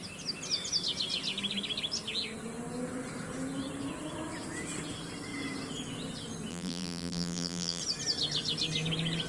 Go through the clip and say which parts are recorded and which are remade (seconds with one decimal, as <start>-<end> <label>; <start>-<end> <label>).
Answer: 0.0-6.5 recorded; 6.5-7.8 remade; 7.8-9.3 recorded